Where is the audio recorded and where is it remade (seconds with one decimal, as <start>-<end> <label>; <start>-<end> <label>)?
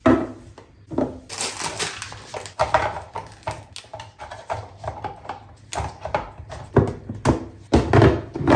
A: 0.0-8.6 recorded